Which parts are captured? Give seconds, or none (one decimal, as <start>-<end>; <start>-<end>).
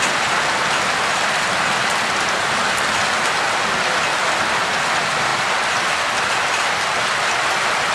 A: 0.0-7.9